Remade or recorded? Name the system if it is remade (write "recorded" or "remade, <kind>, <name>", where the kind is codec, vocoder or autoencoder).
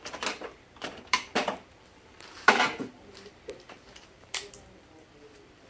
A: remade, vocoder, BigVGAN v2